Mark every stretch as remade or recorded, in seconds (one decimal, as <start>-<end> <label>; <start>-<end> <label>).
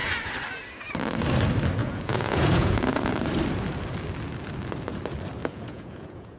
0.0-1.8 recorded; 1.8-3.1 remade; 3.1-5.4 recorded; 5.4-6.4 remade